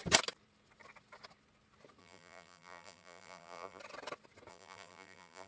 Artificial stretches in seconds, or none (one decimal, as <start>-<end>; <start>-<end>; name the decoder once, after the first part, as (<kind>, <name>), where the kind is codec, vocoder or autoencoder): 2.0-3.8 (vocoder, BigVGAN v2); 4.5-5.5